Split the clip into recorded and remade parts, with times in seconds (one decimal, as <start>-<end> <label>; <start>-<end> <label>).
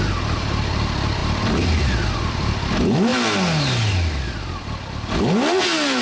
0.0-6.0 recorded